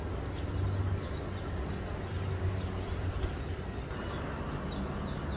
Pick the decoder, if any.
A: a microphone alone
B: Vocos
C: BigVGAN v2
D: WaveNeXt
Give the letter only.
A